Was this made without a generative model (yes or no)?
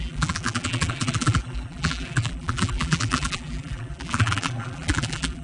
no